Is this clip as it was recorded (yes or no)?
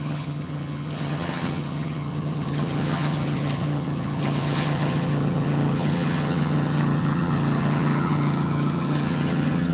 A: no